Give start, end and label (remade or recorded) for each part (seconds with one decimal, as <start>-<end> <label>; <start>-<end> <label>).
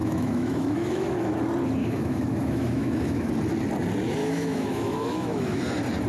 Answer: 0.0-1.4 remade; 1.4-1.8 recorded; 1.8-3.3 remade; 3.3-4.2 recorded; 4.2-5.6 remade; 5.6-6.1 recorded